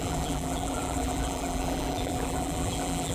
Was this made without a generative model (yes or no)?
no